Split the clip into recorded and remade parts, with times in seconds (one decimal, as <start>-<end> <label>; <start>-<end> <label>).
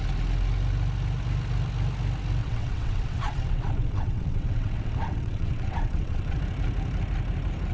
0.0-2.4 recorded; 2.4-6.4 remade; 6.4-7.7 recorded